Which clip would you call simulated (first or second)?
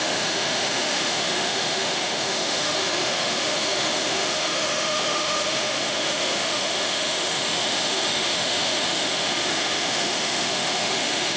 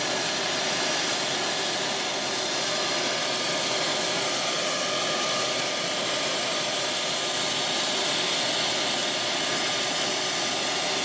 first